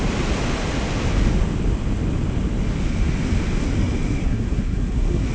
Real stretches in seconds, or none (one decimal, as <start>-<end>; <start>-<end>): 0.0-4.2